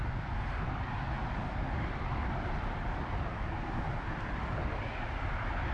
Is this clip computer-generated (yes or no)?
no